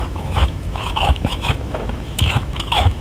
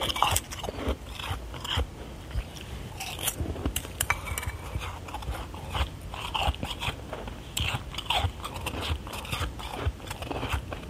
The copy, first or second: first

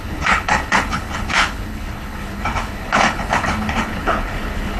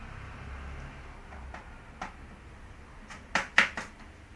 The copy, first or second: first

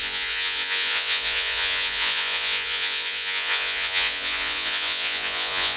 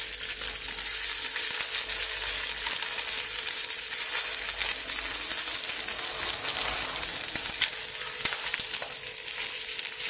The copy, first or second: first